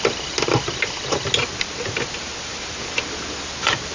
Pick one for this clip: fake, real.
real